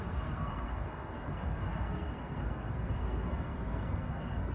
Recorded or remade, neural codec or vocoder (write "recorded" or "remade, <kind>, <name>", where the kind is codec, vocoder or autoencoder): remade, codec, SNAC